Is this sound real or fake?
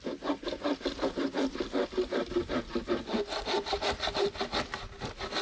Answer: real